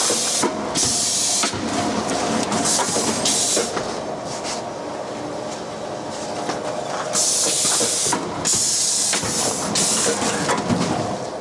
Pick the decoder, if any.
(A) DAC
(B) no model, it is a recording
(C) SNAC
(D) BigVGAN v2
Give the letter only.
B